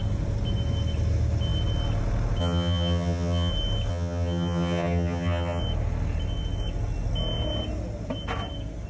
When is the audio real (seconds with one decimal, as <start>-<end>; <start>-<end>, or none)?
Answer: 0.0-2.4; 3.5-3.9; 5.6-8.9